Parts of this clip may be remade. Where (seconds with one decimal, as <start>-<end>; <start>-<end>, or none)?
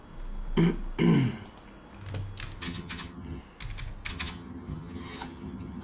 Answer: 2.6-3.4; 4.1-5.8